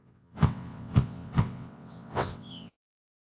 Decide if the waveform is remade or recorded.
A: remade